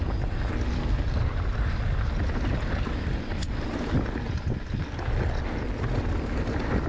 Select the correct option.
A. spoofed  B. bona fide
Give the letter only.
B